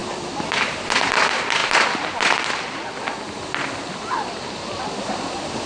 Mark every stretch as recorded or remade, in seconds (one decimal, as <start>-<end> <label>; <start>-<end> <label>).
0.0-5.7 recorded